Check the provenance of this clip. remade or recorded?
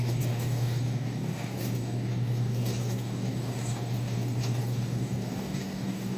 remade